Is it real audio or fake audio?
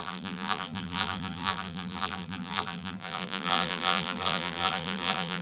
fake